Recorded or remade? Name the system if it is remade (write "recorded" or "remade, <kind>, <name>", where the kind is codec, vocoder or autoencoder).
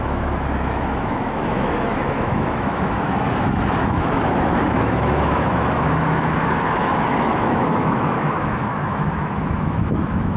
remade, autoencoder, DAC-VAE